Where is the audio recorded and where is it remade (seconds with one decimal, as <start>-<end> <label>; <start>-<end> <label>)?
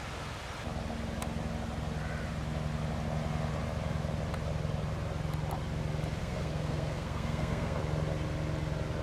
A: 0.0-6.2 recorded; 6.2-7.8 remade; 7.8-9.0 recorded